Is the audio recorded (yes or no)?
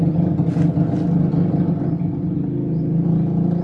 yes